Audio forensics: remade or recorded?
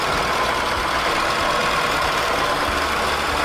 recorded